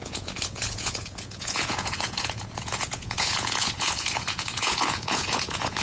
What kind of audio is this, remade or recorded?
remade